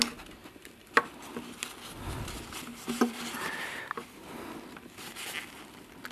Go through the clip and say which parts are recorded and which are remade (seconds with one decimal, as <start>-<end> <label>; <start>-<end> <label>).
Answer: 0.0-2.7 recorded; 2.7-4.6 remade; 4.6-6.1 recorded